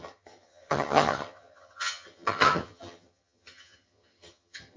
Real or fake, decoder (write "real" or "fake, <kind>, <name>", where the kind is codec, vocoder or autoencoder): fake, vocoder, HiFi-GAN